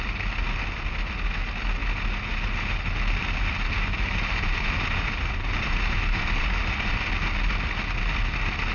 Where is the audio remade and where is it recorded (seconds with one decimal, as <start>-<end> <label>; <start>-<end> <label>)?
0.0-3.9 recorded; 3.9-7.1 remade; 7.1-8.7 recorded